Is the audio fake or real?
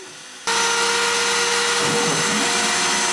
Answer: real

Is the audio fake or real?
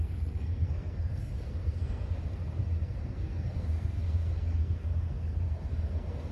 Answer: fake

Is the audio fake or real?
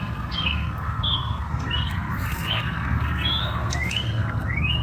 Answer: fake